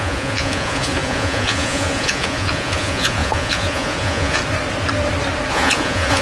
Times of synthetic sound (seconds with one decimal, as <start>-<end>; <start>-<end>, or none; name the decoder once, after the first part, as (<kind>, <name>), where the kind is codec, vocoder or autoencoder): 0.0-4.4 (vocoder, Vocos); 5.5-6.2